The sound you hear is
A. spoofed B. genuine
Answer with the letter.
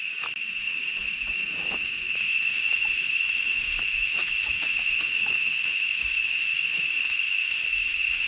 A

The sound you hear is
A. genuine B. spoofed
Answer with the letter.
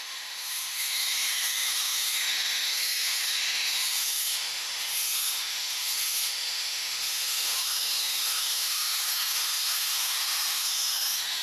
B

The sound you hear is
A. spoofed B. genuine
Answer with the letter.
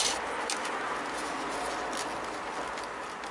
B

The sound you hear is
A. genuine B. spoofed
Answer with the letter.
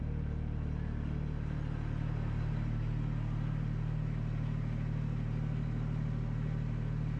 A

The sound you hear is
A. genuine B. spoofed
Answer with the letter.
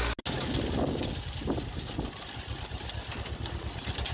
A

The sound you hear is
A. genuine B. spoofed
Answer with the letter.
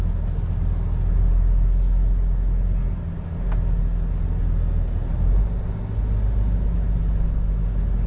A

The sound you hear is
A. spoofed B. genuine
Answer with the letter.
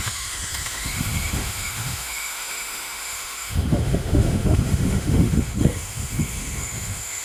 A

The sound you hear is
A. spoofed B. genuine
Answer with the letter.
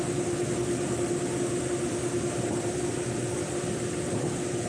B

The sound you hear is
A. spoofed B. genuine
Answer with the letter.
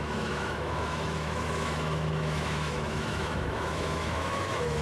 A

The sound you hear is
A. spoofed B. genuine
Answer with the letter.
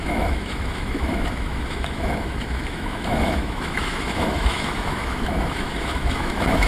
A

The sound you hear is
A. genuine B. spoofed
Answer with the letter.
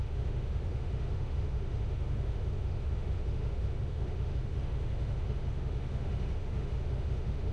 B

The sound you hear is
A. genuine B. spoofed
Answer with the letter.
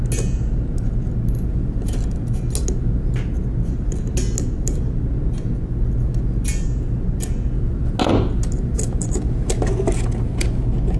A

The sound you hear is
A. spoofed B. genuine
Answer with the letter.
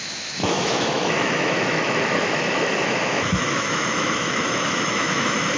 A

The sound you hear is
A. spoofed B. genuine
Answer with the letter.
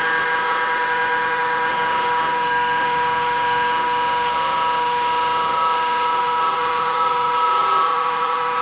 A